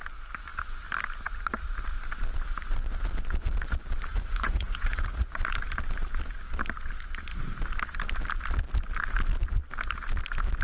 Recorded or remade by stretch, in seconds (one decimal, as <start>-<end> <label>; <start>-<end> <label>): 0.0-4.1 recorded; 4.1-5.3 remade; 5.3-10.6 recorded